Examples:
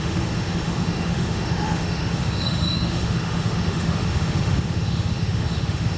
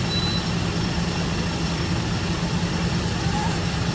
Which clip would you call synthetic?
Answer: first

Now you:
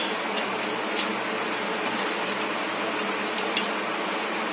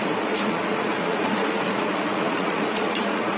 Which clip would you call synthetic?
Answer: second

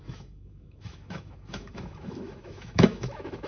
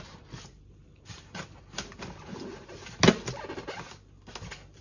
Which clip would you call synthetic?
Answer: first